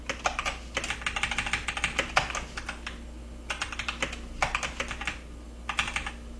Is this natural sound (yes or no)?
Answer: yes